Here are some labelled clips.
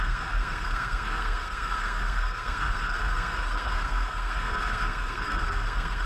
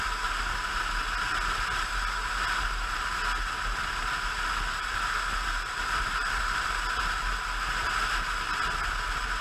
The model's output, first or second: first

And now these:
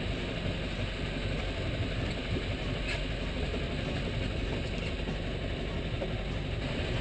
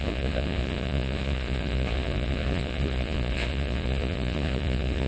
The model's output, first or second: second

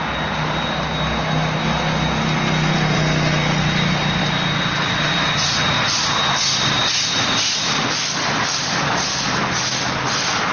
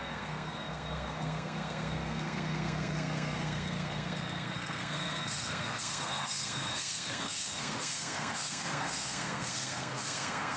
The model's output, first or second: second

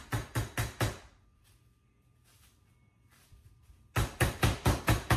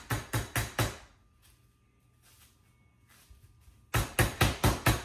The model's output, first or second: first